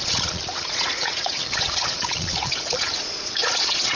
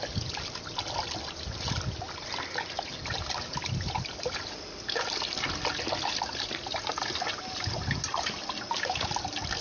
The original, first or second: second